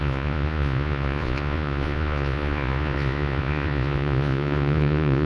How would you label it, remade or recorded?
remade